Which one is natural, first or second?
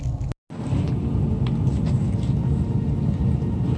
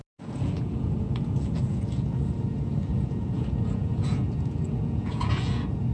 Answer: first